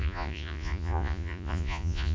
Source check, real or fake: fake